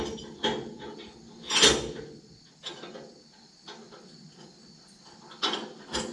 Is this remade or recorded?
recorded